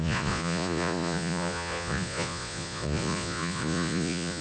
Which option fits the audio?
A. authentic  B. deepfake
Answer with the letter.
B